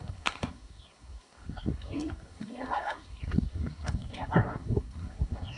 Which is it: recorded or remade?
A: remade